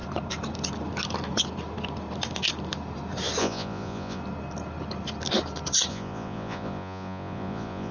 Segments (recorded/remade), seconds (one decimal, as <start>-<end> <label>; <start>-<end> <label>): 0.0-3.4 recorded; 3.4-4.2 remade; 4.2-5.9 recorded; 5.9-7.9 remade